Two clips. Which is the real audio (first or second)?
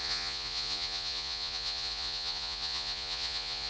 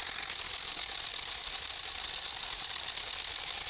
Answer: second